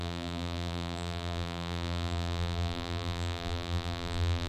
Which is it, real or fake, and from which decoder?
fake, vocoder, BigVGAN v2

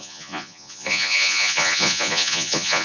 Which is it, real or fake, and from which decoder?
fake, vocoder, Vocos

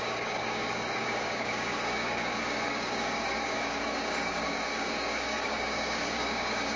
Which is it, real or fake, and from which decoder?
fake, codec, DAC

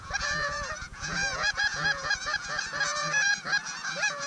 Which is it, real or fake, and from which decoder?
fake, vocoder, Vocos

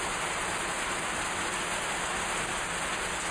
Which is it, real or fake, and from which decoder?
real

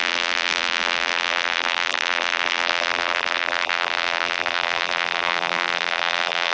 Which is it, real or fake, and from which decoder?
fake, vocoder, BigVGAN v2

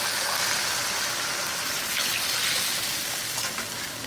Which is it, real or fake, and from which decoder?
real